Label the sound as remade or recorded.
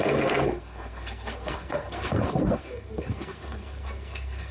remade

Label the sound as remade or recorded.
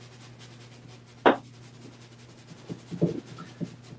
recorded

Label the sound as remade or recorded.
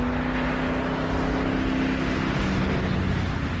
recorded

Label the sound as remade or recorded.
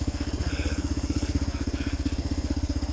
remade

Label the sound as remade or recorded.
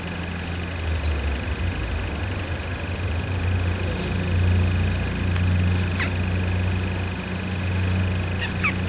recorded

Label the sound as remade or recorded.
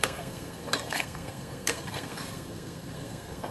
remade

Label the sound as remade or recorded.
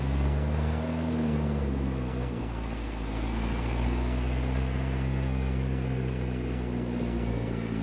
remade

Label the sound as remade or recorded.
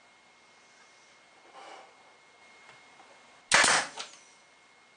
recorded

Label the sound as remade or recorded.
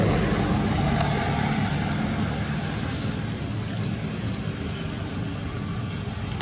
recorded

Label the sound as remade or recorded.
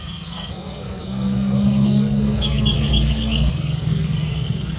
remade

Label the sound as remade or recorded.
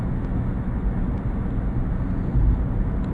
recorded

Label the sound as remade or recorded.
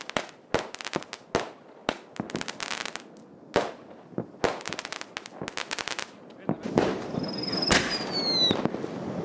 recorded